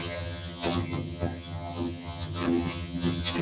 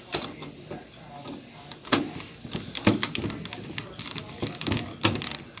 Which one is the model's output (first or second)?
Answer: first